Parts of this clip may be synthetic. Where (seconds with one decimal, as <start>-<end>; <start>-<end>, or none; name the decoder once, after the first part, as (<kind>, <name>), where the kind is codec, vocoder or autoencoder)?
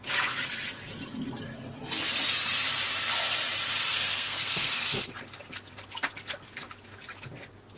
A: 3.8-4.7 (codec, SNAC)